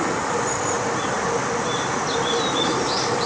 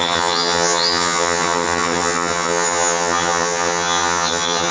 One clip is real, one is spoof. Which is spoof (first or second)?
second